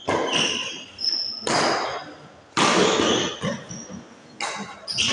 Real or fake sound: real